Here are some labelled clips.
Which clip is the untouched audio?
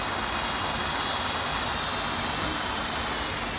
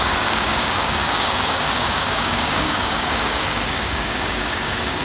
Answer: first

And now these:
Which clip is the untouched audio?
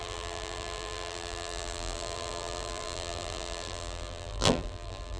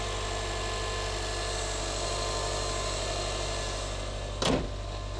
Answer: second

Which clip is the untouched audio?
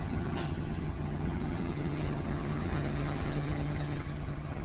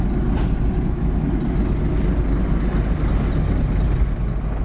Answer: second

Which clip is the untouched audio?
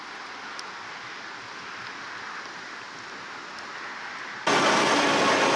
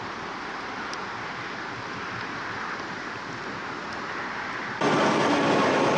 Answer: first